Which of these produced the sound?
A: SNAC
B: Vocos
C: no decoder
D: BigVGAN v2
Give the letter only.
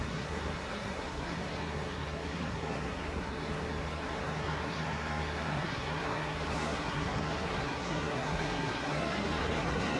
A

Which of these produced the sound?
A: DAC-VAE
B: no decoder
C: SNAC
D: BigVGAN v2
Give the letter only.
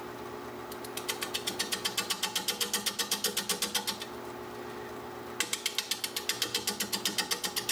B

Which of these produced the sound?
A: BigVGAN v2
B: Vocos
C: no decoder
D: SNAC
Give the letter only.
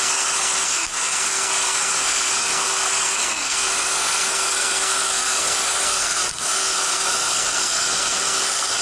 D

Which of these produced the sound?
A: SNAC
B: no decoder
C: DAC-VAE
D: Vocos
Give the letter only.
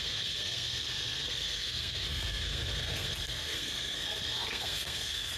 A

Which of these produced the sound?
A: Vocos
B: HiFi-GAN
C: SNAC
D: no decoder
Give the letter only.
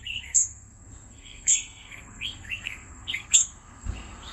C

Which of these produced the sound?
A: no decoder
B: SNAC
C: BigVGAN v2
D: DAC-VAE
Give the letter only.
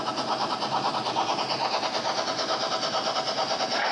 A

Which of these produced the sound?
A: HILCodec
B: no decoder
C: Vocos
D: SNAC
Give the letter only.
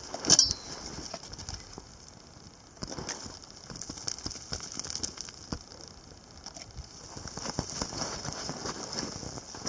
B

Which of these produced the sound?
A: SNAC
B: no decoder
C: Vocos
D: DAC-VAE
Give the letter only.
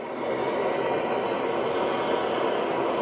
B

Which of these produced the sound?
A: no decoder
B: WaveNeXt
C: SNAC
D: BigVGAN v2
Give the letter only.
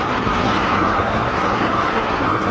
C